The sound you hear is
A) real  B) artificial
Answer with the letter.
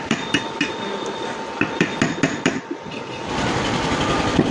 A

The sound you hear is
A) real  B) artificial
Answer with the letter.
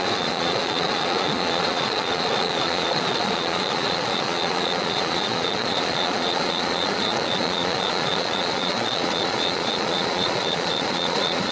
B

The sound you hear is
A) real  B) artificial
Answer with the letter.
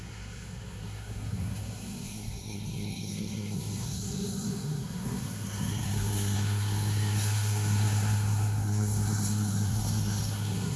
B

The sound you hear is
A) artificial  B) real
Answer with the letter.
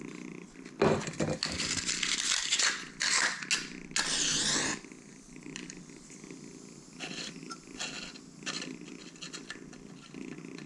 B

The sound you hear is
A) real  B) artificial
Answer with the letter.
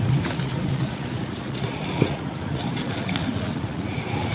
B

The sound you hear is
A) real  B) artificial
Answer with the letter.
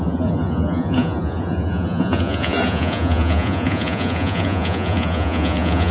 B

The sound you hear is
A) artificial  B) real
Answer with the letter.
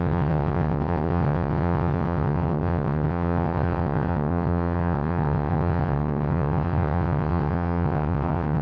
A